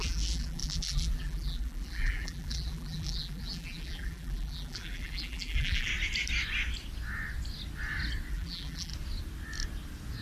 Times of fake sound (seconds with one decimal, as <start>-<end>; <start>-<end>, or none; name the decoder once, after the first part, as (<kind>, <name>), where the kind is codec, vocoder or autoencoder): 0.0-5.9 (vocoder, BigVGAN v2); 8.3-8.9